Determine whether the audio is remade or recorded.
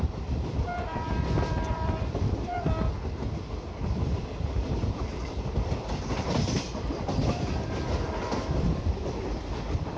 remade